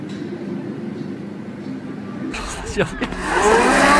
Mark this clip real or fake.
real